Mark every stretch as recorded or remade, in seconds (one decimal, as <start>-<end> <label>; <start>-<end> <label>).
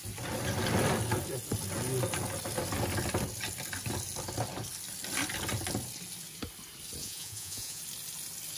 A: 0.0-7.0 recorded; 7.0-7.8 remade; 7.8-8.6 recorded